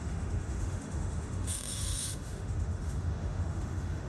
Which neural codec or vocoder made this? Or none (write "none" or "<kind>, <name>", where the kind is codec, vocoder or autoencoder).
autoencoder, DAC-VAE